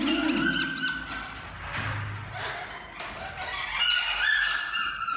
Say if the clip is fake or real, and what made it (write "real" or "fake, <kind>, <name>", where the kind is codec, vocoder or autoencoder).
real